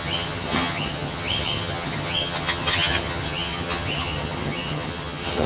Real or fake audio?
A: fake